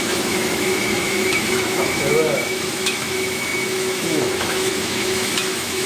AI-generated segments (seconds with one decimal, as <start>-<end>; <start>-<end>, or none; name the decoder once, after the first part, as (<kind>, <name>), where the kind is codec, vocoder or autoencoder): 0.0-5.9 (autoencoder, DAC-VAE)